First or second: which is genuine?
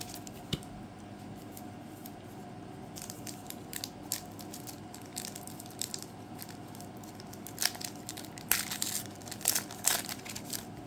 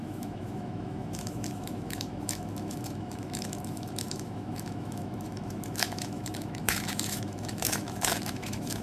first